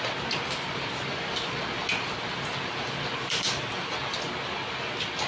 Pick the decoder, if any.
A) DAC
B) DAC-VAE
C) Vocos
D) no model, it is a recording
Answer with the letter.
D